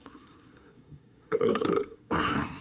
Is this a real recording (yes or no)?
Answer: no